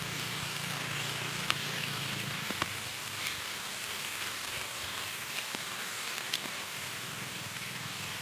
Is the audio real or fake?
fake